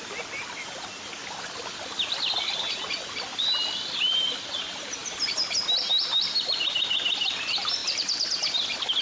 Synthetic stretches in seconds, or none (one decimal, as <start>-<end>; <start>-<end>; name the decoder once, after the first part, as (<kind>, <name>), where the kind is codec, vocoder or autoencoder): none